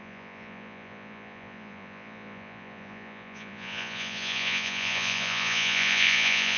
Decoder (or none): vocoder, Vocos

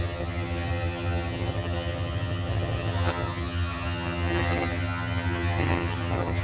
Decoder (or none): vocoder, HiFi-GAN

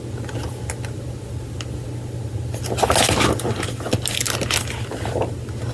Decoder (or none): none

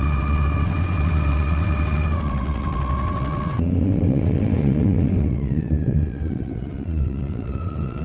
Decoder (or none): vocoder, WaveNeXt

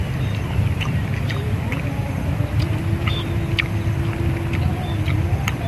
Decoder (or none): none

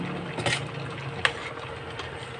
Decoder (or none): none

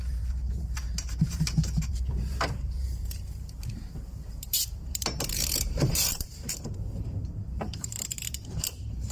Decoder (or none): vocoder, BigVGAN v2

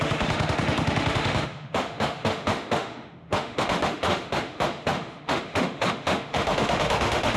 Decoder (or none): autoencoder, DAC-VAE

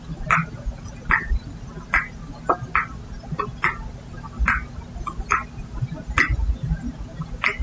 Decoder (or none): none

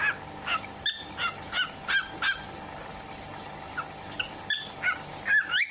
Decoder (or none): none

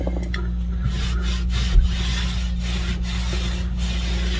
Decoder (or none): none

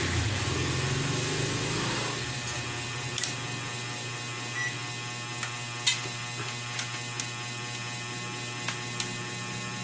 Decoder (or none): none